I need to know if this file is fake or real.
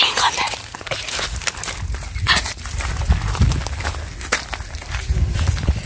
real